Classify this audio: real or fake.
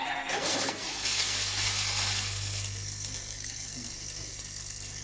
fake